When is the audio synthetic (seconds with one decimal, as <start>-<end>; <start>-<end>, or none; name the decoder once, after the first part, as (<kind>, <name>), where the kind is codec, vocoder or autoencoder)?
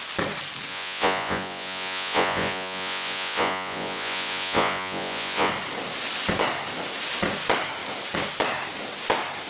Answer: 0.7-5.5 (vocoder, Vocos)